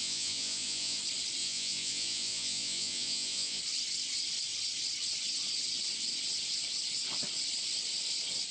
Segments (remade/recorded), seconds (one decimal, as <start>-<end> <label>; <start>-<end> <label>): 0.0-1.0 remade; 1.0-1.4 recorded; 1.4-3.6 remade; 3.6-8.5 recorded